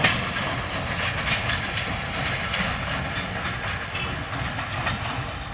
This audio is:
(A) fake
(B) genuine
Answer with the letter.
B